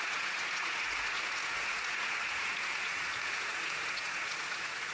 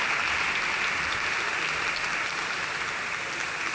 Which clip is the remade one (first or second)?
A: first